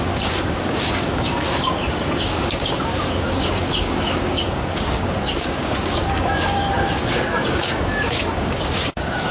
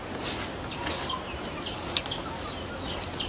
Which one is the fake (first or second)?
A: first